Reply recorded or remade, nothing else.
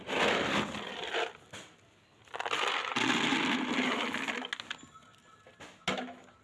recorded